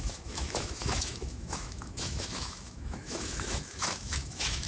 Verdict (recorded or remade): remade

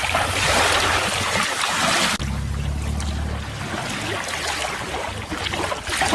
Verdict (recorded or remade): recorded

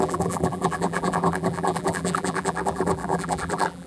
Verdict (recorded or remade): remade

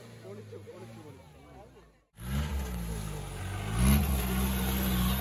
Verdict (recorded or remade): recorded